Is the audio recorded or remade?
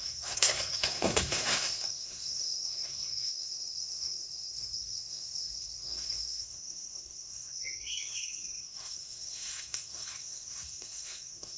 remade